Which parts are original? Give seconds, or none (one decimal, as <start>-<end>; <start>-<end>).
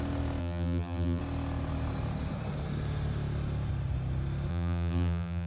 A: 0.0-0.4; 1.2-4.5